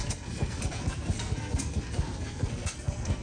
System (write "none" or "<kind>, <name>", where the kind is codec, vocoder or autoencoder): codec, SNAC